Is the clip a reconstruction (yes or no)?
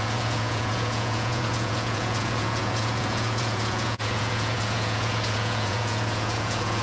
yes